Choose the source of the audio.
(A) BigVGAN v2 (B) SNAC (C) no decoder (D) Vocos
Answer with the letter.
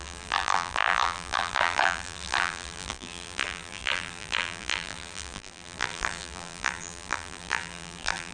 A